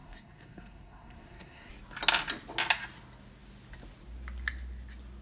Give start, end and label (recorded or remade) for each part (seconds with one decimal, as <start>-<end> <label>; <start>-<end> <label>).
0.0-1.7 remade; 1.7-5.2 recorded

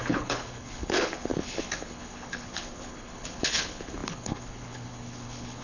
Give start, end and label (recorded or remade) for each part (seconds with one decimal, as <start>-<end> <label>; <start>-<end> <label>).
0.0-5.6 remade